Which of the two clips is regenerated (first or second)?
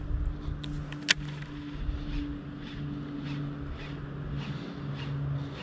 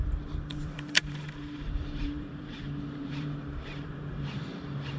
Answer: second